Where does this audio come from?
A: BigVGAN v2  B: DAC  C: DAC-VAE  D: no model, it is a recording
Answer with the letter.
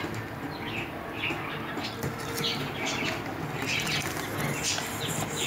D